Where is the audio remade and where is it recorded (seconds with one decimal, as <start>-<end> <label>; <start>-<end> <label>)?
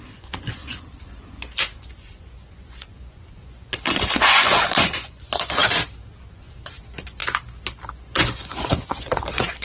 0.0-5.6 remade; 5.6-6.3 recorded; 6.3-7.2 remade; 7.2-7.9 recorded; 7.9-9.6 remade